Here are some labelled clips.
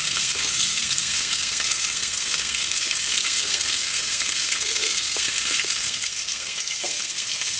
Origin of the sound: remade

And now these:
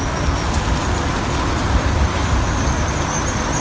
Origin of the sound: recorded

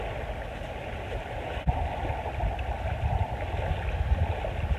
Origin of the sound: recorded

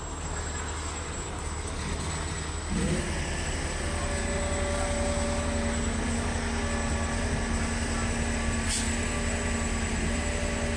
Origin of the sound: recorded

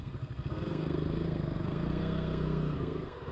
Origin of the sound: remade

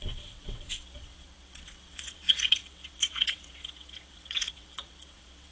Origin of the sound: remade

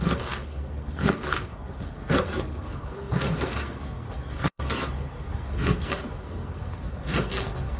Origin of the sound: remade